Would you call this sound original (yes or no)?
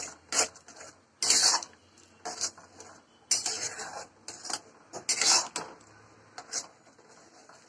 yes